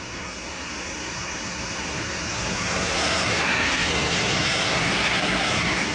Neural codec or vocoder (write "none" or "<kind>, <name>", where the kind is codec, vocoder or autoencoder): codec, SNAC